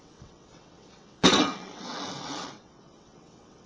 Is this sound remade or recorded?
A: remade